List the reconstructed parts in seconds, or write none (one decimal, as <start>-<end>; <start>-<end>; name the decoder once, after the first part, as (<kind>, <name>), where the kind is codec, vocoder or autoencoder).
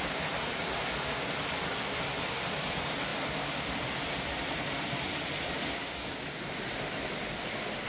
none